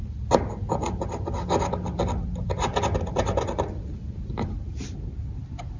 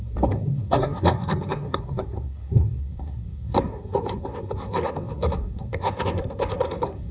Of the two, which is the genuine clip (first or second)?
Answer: first